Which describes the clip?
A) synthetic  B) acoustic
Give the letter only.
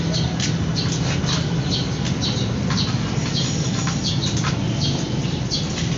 B